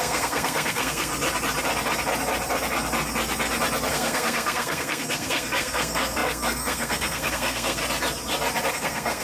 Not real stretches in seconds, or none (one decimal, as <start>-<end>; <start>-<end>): 0.0-1.1; 3.9-7.8; 8.7-9.2